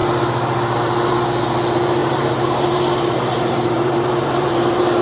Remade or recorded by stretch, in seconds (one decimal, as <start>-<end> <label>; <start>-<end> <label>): 0.0-2.0 recorded; 2.0-5.0 remade